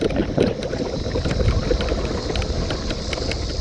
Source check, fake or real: real